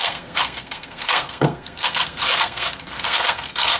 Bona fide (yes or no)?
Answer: no